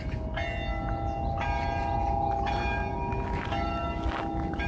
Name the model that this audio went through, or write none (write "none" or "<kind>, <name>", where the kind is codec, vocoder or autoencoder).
none